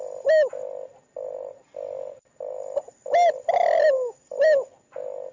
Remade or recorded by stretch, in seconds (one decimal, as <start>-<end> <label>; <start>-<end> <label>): 0.0-5.3 recorded